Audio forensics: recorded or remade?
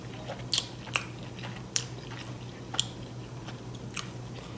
recorded